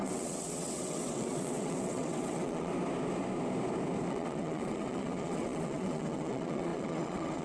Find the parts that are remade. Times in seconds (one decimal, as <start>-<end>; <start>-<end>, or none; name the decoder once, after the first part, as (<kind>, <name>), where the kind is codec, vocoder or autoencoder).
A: 0.0-2.7 (vocoder, WaveNeXt); 4.1-7.4